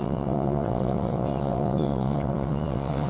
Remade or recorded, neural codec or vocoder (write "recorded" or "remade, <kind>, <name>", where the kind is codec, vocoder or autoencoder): remade, vocoder, WaveNeXt